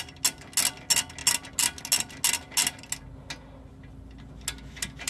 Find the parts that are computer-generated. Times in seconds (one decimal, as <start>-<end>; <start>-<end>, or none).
none